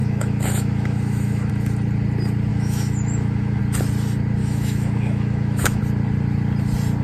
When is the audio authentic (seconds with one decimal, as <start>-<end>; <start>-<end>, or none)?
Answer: 1.5-2.5; 3.6-4.4; 5.8-7.0